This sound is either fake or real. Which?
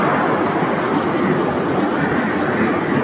real